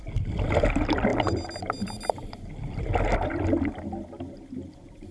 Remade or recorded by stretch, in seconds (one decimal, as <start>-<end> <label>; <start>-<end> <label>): 0.0-5.1 recorded